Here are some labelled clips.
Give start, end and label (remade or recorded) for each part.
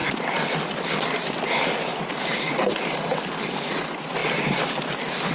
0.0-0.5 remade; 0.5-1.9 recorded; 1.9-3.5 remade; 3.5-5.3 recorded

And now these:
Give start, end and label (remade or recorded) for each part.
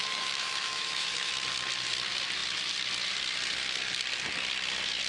0.0-1.3 remade; 1.3-5.1 recorded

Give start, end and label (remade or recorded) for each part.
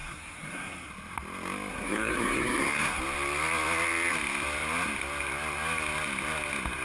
0.0-0.9 remade; 0.9-1.7 recorded; 1.7-3.0 remade; 3.0-6.8 recorded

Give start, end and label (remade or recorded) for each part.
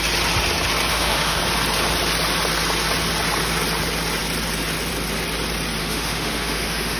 0.0-0.9 recorded; 0.9-1.4 remade; 1.4-5.8 recorded; 5.8-7.0 remade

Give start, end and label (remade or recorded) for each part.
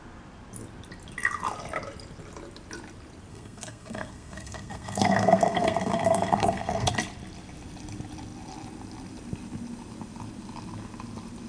0.0-3.3 recorded; 3.3-6.9 remade; 6.9-11.5 recorded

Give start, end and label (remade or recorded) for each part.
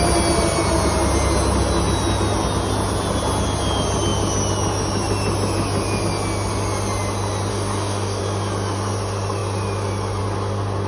0.0-7.5 recorded; 7.5-8.2 remade; 8.2-10.9 recorded